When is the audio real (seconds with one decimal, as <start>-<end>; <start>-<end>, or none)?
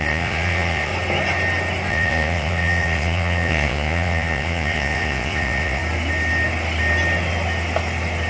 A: 0.9-1.9; 5.8-8.3